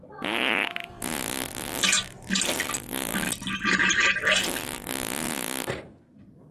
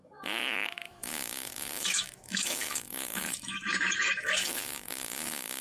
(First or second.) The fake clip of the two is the second